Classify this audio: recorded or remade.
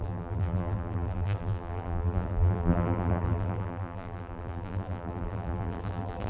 remade